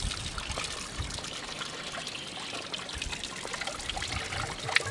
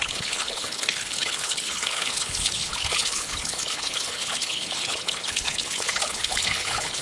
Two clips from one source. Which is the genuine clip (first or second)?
first